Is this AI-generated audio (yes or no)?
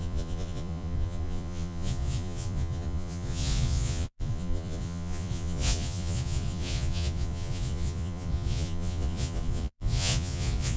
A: yes